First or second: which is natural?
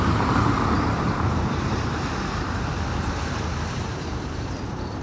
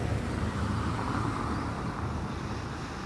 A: second